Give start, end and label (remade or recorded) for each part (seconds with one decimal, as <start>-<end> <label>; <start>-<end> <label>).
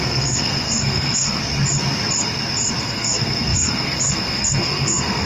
0.0-1.4 remade; 1.4-2.8 recorded; 2.8-5.3 remade